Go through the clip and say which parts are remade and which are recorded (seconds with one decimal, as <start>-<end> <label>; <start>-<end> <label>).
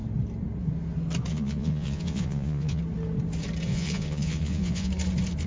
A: 0.0-1.3 recorded; 1.3-2.8 remade; 2.8-3.7 recorded; 3.7-4.9 remade; 4.9-5.5 recorded